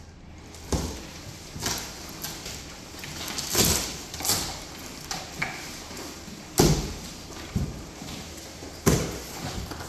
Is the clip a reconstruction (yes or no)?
no